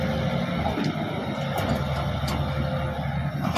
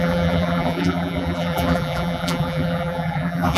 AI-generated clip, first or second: second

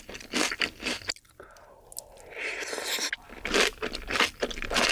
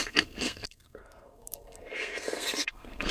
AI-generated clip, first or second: second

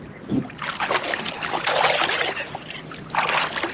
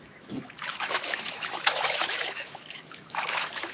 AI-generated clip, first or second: second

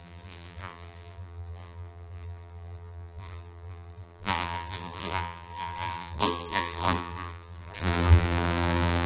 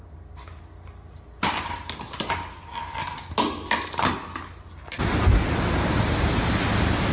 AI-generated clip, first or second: first